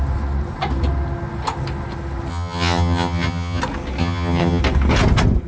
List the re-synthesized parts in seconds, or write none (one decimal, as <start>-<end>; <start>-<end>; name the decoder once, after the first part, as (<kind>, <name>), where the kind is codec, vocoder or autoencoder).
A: 2.3-3.6 (vocoder, HiFi-GAN); 4.0-4.6